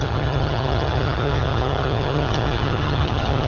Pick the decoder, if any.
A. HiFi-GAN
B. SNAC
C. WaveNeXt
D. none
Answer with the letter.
A